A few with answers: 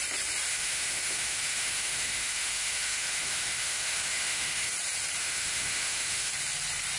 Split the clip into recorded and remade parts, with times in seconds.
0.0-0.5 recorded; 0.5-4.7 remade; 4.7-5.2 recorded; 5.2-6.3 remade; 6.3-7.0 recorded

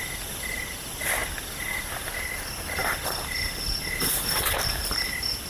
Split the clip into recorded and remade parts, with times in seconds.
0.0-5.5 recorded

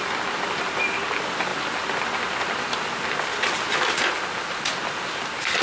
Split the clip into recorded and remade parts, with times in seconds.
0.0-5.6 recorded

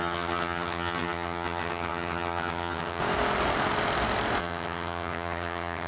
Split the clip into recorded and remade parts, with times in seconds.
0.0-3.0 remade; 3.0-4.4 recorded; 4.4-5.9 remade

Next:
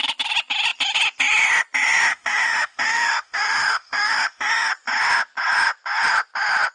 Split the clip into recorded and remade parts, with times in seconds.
0.0-2.1 recorded; 2.1-4.7 remade; 4.7-6.7 recorded

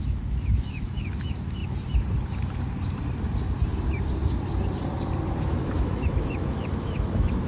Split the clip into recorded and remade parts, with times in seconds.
0.0-1.6 remade; 1.6-5.3 recorded; 5.3-7.5 remade

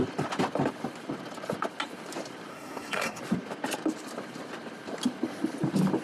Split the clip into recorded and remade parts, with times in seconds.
0.0-2.5 recorded; 2.5-3.2 remade; 3.2-6.0 recorded

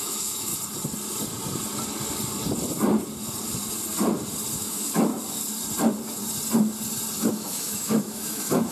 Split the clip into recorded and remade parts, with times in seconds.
0.0-0.5 remade; 0.5-4.6 recorded; 4.6-5.1 remade; 5.1-7.3 recorded; 7.3-8.7 remade